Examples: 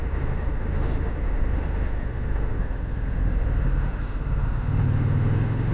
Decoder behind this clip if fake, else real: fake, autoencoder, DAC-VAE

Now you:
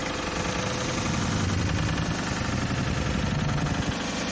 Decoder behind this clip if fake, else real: real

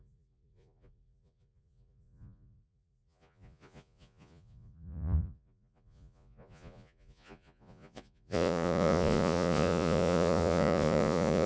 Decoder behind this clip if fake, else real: fake, vocoder, Vocos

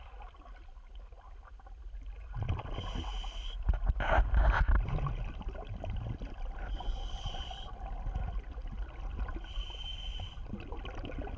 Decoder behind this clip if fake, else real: real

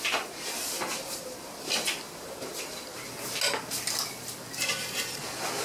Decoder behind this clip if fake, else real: real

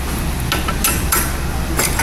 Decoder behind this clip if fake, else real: real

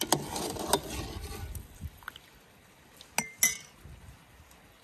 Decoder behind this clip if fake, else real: real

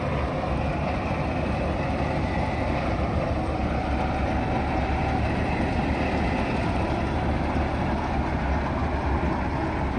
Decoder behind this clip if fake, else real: real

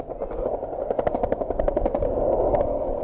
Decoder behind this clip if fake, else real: real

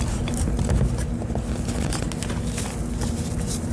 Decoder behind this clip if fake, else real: real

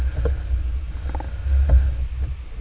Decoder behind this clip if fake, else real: real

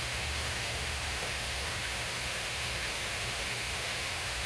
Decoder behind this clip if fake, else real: fake, autoencoder, DAC-VAE